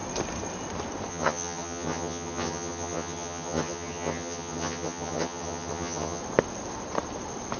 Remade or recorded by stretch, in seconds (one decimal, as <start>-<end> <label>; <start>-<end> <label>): 0.0-1.1 recorded; 1.1-6.2 remade; 6.2-7.6 recorded